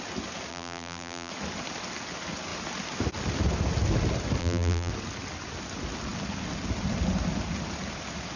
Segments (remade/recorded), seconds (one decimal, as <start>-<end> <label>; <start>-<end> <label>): 0.0-0.5 recorded; 0.5-1.3 remade; 1.3-4.4 recorded; 4.4-4.9 remade; 4.9-8.4 recorded